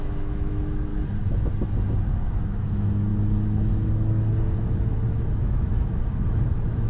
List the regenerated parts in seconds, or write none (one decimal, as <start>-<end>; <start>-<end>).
0.0-0.9; 2.2-3.1; 5.4-6.9